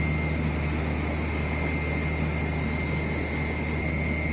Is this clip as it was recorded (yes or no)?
yes